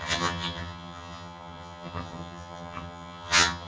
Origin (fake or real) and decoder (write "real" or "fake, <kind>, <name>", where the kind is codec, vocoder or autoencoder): fake, vocoder, HiFi-GAN